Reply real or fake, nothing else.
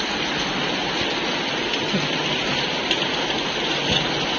real